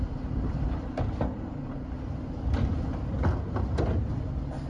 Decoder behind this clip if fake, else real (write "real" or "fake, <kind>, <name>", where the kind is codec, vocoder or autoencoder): real